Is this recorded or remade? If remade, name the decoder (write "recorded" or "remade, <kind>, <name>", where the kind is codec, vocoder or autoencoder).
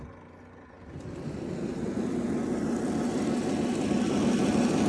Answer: recorded